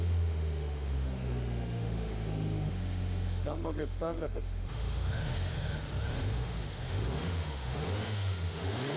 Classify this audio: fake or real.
fake